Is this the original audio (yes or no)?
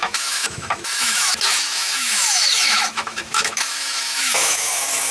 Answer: no